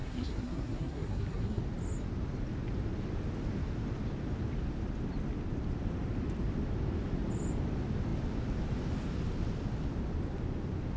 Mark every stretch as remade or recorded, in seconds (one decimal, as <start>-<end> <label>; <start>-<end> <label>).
0.0-1.6 remade; 1.6-11.0 recorded